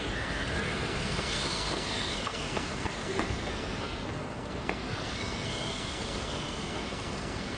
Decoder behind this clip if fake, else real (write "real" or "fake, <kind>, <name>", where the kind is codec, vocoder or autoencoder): fake, codec, SNAC